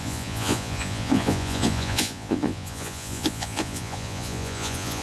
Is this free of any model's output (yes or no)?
no